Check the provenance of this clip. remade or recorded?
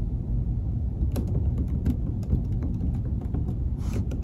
recorded